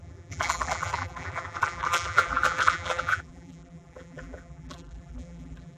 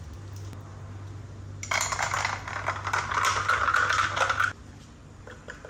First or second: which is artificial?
first